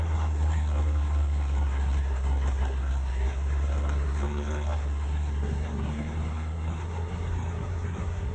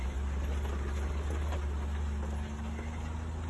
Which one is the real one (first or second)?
second